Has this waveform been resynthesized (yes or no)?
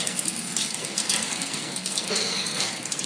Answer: yes